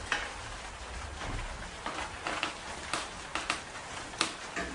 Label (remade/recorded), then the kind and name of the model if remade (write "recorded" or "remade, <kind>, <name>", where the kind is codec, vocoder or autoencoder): recorded